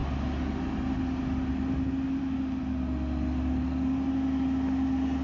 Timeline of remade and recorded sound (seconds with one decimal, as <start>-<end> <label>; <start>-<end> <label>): 0.0-5.2 recorded

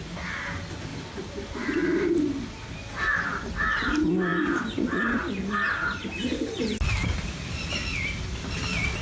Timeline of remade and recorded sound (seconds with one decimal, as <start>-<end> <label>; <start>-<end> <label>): 0.0-0.9 recorded; 0.9-3.5 remade; 3.5-9.0 recorded

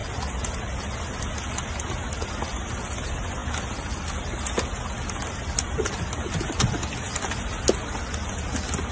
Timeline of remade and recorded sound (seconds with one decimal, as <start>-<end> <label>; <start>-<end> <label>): 0.0-8.9 recorded